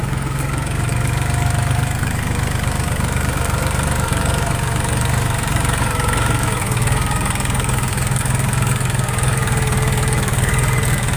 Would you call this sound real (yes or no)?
no